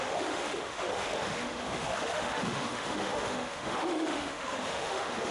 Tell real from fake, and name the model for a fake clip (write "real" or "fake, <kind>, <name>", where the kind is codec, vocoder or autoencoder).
fake, autoencoder, DAC-VAE